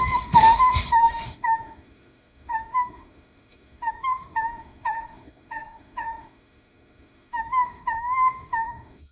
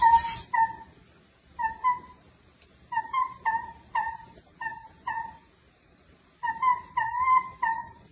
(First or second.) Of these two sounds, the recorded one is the second